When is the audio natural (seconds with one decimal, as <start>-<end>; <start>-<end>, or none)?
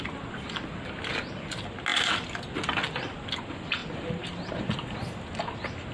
0.0-1.9; 3.4-3.8; 4.5-5.9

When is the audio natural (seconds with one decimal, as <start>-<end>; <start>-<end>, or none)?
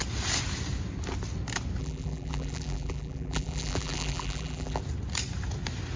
0.0-1.8; 4.8-6.0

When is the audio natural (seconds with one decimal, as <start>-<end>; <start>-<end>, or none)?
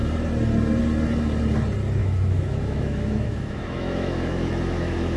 0.0-2.0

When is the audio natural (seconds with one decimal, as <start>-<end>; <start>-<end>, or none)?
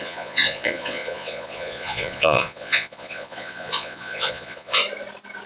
4.8-5.5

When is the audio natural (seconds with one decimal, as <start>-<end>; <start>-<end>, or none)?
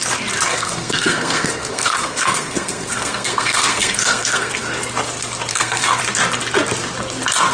0.0-0.5; 4.5-5.5; 6.0-7.5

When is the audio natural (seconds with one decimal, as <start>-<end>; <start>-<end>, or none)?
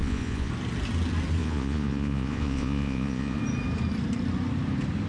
0.5-1.4; 3.4-5.1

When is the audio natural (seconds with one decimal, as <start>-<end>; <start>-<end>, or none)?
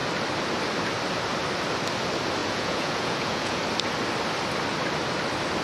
0.0-2.4; 3.6-5.6